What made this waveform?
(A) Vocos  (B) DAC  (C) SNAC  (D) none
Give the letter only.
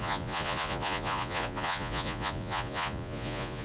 A